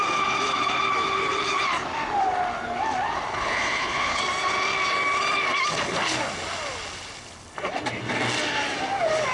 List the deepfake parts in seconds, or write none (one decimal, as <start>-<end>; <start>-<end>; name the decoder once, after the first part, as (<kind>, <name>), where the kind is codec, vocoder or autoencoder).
3.3-4.2 (codec, HILCodec)